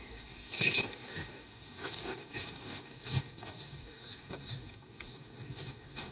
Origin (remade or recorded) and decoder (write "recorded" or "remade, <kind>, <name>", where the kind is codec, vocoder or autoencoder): remade, codec, DAC